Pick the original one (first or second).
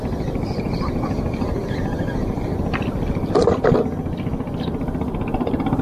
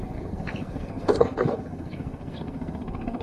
first